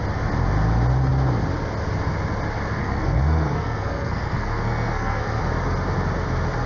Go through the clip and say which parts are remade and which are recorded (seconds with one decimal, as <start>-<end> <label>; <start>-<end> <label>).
0.0-2.8 recorded; 2.8-5.4 remade; 5.4-6.7 recorded